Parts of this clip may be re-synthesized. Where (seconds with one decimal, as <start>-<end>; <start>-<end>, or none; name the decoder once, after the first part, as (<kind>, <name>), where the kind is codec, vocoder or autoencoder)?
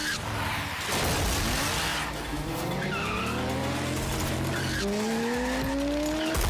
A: 1.9-3.2 (vocoder, BigVGAN v2); 3.6-4.6